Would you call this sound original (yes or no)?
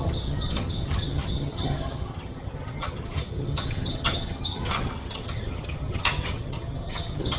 no